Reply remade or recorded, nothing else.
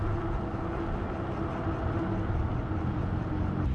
recorded